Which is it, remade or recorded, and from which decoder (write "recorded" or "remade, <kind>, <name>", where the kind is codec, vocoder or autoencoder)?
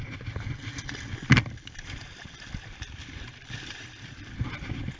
remade, vocoder, BigVGAN v2